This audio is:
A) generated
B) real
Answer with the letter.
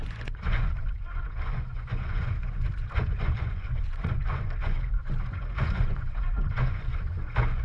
A